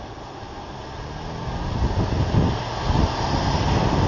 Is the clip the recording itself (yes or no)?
yes